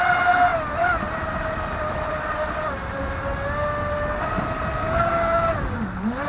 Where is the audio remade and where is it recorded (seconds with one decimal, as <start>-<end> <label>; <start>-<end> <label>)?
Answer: 0.0-4.8 recorded; 4.8-5.5 remade; 5.5-6.3 recorded